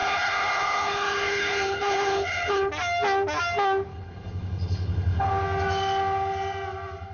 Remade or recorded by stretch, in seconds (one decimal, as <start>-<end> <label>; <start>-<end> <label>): 0.0-2.7 remade; 2.7-3.9 recorded; 3.9-5.3 remade; 5.3-7.1 recorded